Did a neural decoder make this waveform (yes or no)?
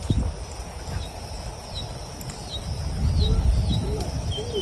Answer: no